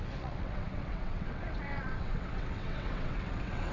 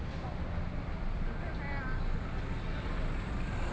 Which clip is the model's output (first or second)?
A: first